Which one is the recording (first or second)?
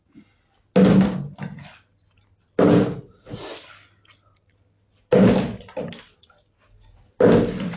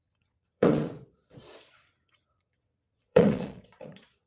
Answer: first